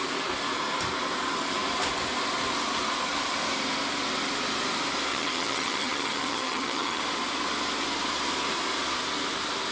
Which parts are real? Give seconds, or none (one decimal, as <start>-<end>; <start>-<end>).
0.0-5.1; 7.0-9.7